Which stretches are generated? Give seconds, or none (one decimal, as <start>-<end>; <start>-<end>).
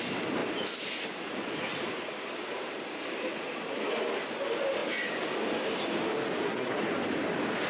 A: 6.4-6.9